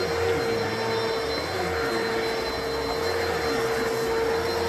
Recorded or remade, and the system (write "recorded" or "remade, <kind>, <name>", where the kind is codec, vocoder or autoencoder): recorded